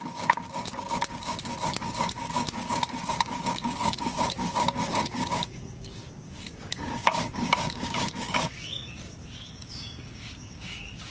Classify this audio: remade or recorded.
remade